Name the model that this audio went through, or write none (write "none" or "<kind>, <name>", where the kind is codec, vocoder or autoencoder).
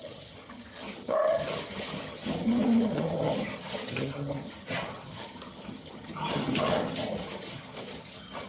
vocoder, HiFi-GAN